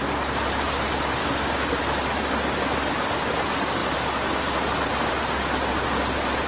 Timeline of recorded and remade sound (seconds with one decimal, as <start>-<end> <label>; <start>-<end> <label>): 0.0-1.2 recorded; 1.2-1.8 remade; 1.8-6.5 recorded